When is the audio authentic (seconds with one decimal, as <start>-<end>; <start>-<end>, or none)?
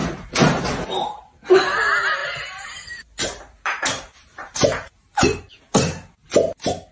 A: 0.8-2.2; 5.6-6.9